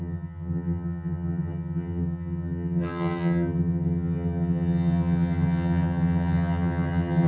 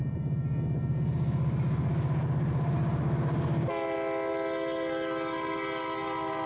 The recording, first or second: second